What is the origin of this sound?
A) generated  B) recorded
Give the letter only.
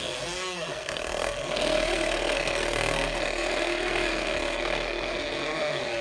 A